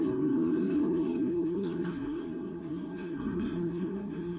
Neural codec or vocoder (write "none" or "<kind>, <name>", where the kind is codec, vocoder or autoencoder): codec, SNAC